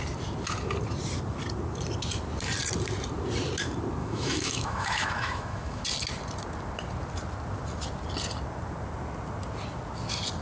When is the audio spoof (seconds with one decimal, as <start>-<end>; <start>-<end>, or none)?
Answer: 4.0-5.8